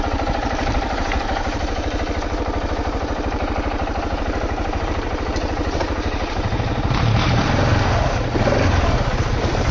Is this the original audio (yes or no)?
no